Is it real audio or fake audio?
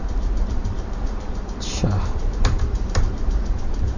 fake